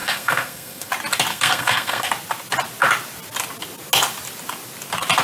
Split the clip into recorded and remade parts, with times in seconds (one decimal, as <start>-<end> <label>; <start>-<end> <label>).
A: 0.0-0.9 remade; 0.9-1.3 recorded; 1.3-2.1 remade; 2.1-5.2 recorded